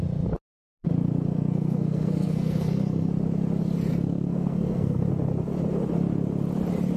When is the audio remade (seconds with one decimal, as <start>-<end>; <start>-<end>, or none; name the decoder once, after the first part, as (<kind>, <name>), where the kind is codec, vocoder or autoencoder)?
1.3-3.1 (codec, SNAC); 3.9-5.1